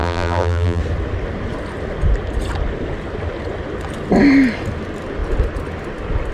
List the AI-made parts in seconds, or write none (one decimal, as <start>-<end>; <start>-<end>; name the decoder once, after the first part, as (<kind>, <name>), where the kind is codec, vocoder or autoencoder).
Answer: 0.0-0.8 (vocoder, BigVGAN v2)